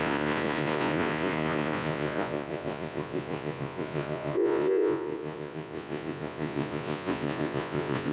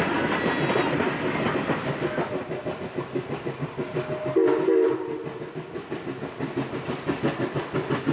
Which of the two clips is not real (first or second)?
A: first